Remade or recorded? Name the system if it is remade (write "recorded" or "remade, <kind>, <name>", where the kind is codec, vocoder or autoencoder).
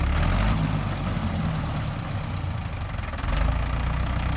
recorded